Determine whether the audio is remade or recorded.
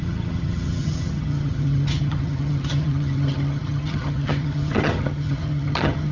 remade